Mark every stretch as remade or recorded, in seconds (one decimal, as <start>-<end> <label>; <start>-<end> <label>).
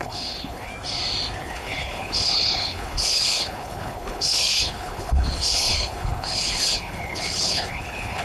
0.0-0.7 remade; 0.7-1.4 recorded; 1.4-8.2 remade